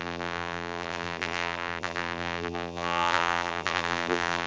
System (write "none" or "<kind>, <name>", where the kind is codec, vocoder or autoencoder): vocoder, BigVGAN v2